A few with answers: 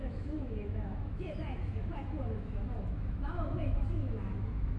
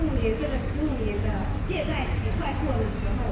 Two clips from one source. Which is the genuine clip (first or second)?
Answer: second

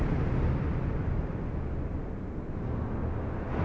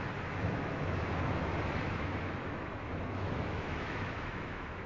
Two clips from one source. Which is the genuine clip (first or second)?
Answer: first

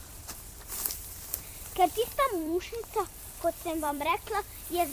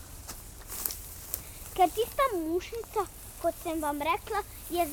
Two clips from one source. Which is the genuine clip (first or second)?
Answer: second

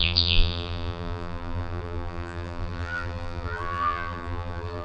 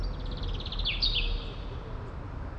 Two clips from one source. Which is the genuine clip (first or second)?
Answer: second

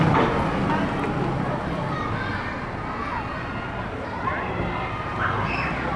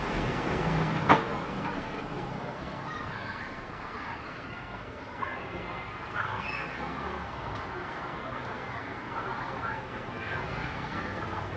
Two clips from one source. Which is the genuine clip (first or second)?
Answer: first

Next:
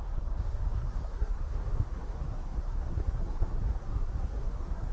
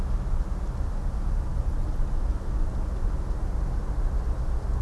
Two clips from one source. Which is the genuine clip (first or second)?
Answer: second